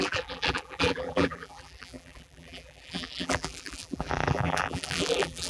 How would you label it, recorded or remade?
remade